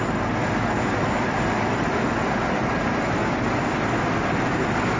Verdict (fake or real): real